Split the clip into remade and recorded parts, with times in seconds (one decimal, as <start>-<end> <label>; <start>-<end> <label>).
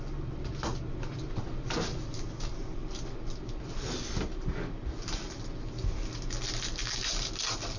0.0-7.8 recorded